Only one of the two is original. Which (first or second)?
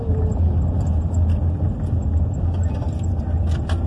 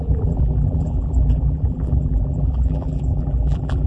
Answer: first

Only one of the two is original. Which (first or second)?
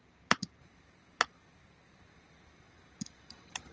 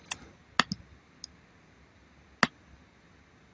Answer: second